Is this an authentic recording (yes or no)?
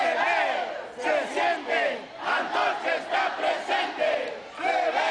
yes